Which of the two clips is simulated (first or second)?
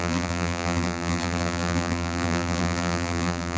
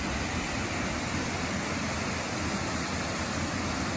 first